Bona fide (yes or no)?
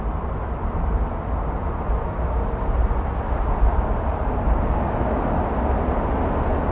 yes